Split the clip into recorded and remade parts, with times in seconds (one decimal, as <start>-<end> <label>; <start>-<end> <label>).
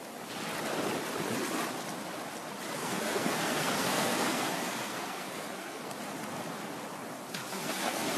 0.0-2.8 recorded; 2.8-6.0 remade; 6.0-7.5 recorded; 7.5-8.2 remade